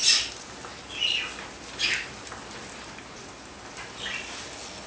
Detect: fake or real real